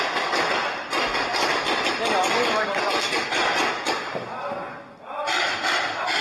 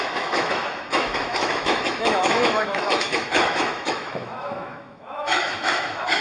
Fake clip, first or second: second